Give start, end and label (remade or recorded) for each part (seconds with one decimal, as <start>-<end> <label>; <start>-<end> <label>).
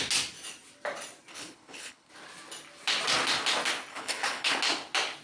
0.0-1.3 recorded; 1.3-2.1 remade; 2.1-3.9 recorded; 3.9-4.6 remade; 4.6-5.2 recorded